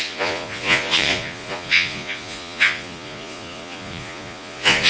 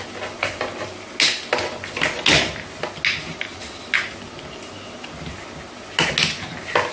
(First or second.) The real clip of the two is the second